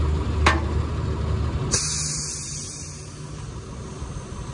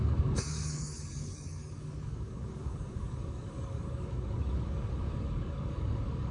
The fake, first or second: second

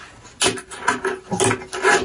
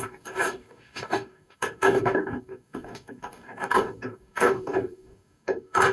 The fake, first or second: second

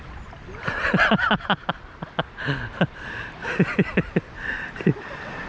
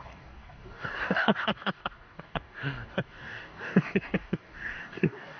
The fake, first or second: second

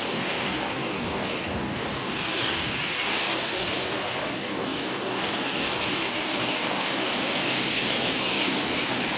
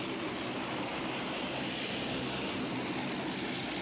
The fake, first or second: first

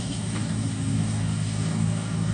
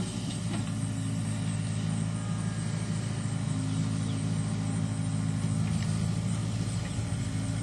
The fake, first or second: first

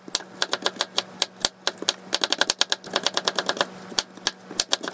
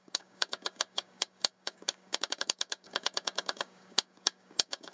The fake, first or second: second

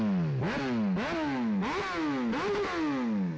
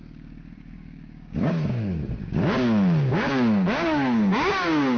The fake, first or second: second